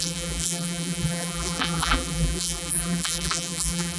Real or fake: fake